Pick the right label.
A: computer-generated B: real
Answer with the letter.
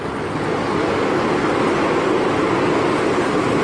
B